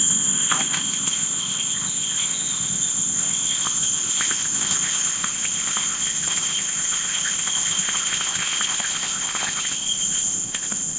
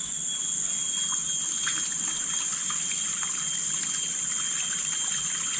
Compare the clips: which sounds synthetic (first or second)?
first